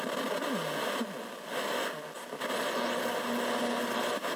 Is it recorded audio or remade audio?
recorded